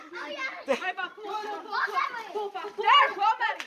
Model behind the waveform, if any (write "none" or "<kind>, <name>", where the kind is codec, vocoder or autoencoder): none